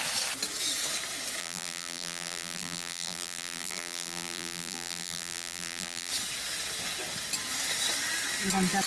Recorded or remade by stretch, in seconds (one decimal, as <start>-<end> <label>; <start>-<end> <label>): 0.0-1.4 recorded; 1.4-6.1 remade; 6.1-8.9 recorded